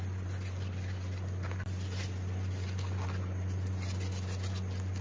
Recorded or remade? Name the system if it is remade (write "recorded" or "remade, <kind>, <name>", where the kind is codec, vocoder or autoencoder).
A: recorded